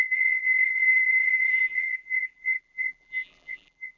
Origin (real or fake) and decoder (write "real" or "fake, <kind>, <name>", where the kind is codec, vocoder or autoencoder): fake, vocoder, BigVGAN v2